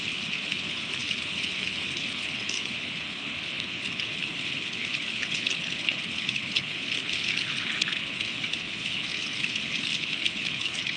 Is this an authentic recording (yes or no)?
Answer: no